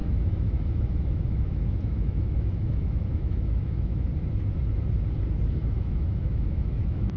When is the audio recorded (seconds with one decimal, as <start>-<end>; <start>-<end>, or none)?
4.1-5.5